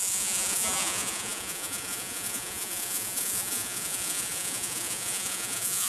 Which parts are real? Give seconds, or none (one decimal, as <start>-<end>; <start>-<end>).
none